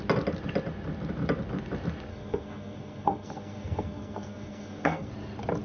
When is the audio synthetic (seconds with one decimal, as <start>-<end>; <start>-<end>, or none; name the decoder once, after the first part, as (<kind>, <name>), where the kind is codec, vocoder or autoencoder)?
2.1-5.1 (codec, SNAC)